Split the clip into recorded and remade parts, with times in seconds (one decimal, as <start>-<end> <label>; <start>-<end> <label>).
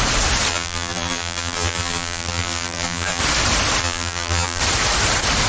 0.0-0.5 recorded; 0.5-3.2 remade; 3.2-3.8 recorded; 3.8-4.6 remade; 4.6-5.5 recorded